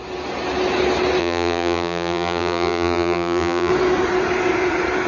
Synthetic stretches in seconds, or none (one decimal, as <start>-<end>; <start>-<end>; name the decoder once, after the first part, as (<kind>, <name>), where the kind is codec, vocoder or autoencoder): 1.2-3.7 (vocoder, BigVGAN v2)